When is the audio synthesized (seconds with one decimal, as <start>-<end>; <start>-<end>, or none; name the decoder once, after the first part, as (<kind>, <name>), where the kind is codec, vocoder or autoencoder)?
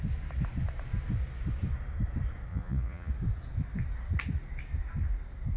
2.5-3.1 (vocoder, Vocos)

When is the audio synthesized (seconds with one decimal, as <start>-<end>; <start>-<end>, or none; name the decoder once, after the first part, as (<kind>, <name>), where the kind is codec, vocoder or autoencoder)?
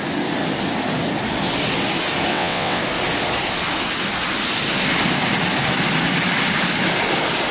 2.3-2.8 (vocoder, WaveNeXt)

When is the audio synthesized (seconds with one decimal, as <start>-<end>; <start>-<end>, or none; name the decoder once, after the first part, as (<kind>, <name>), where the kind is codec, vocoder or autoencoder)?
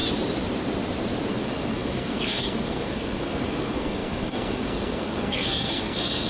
1.3-6.3 (codec, SNAC)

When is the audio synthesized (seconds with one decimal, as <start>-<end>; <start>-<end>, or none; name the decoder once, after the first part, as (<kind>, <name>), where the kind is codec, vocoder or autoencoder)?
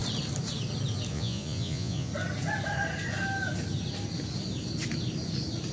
1.1-2.1 (vocoder, Vocos)